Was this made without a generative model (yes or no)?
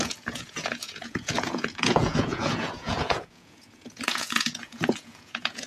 no